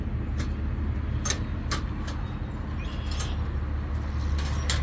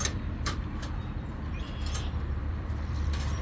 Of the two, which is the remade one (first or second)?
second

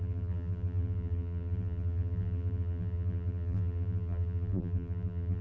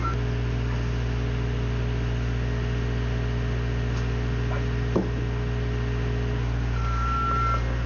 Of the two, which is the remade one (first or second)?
first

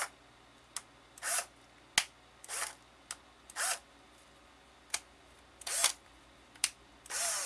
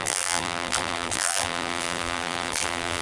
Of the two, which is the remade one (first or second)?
second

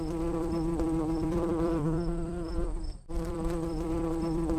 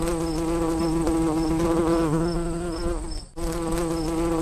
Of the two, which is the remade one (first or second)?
first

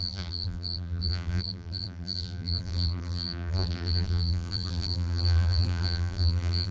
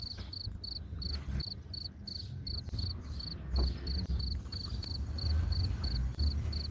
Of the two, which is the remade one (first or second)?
first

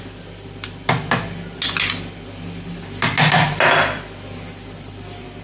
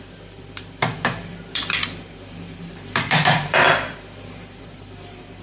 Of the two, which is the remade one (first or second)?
second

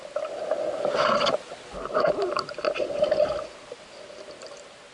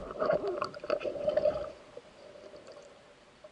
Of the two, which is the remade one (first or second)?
second